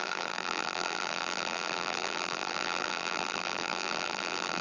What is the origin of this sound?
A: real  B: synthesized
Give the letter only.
B